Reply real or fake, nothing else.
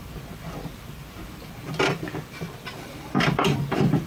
fake